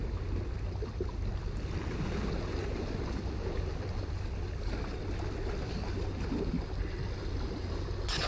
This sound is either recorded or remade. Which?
recorded